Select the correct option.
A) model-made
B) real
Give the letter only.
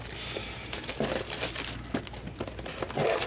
B